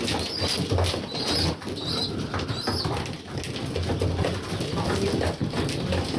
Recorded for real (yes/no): yes